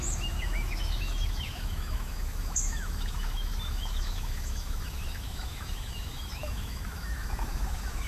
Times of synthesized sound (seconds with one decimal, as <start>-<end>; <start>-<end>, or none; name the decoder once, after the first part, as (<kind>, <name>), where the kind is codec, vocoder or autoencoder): 0.0-8.1 (autoencoder, DAC-VAE)